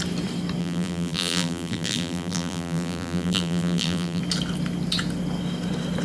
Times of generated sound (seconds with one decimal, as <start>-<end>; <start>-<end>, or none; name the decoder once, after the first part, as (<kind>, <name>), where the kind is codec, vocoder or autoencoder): 0.6-4.2 (vocoder, BigVGAN v2)

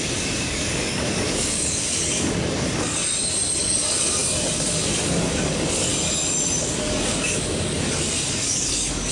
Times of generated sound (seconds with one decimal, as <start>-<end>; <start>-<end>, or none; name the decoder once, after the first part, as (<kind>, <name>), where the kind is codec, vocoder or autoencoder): 0.0-3.0 (codec, DAC); 3.6-5.9; 6.6-9.1

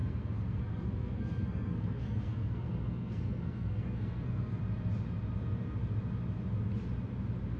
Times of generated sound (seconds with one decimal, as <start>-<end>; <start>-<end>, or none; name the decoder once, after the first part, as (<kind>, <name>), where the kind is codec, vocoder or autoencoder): 0.0-4.6 (codec, SNAC)

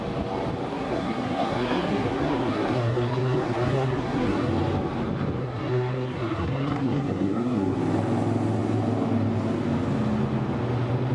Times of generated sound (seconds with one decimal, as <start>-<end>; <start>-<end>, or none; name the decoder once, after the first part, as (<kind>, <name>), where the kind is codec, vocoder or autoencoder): 0.7-4.5 (codec, SNAC); 5.4-7.8

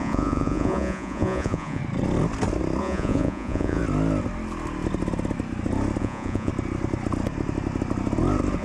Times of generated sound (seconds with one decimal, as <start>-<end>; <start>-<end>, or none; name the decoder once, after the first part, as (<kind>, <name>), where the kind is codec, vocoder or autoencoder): 0.0-1.8 (vocoder, Vocos); 2.8-3.8; 6.0-6.5